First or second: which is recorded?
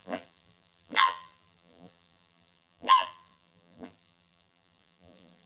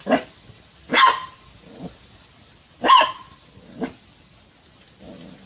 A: second